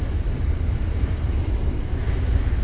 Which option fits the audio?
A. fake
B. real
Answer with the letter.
B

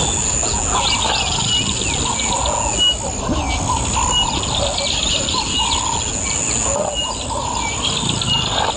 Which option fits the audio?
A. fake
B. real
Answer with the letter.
B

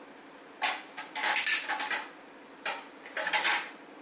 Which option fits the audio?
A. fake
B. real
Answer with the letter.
B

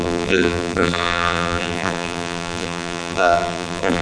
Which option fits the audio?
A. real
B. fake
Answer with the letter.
B